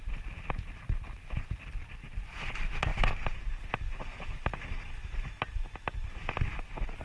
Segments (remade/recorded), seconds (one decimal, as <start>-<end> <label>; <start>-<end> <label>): 0.0-7.0 recorded